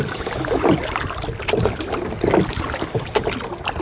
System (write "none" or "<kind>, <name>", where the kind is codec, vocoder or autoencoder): none